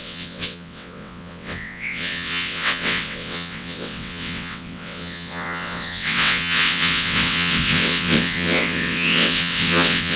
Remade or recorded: remade